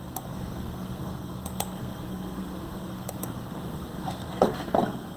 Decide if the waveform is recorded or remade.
remade